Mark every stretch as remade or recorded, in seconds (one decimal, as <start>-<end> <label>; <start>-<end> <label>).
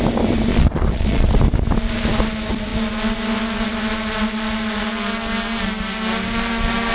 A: 0.0-0.5 recorded; 0.5-1.4 remade; 1.4-6.9 recorded